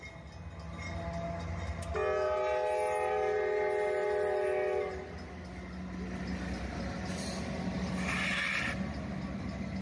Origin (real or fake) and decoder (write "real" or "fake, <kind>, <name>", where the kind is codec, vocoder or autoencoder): real